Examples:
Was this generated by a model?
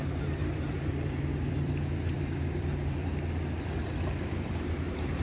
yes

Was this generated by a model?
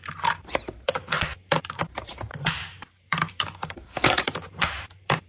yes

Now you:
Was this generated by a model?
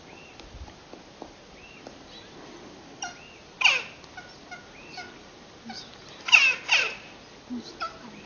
no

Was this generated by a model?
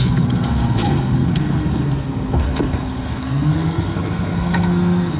yes